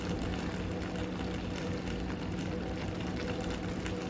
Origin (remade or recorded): recorded